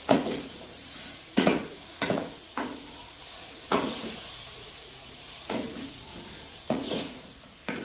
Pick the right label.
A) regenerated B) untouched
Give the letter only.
A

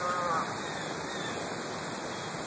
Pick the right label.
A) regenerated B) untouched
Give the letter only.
B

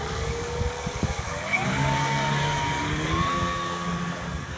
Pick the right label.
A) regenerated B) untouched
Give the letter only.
A